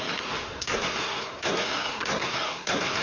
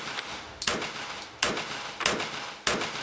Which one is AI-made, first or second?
first